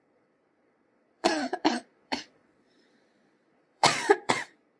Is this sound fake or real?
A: fake